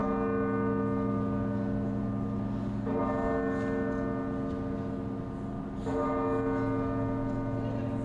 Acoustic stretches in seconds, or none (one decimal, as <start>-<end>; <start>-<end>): 0.0-8.0